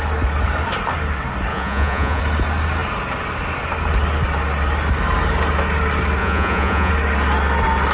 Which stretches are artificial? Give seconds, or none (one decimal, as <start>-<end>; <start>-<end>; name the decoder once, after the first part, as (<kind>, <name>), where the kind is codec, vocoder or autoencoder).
1.5-2.2 (vocoder, Vocos); 6.2-6.9